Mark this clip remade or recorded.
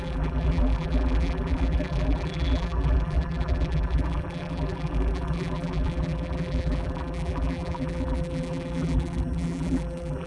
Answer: remade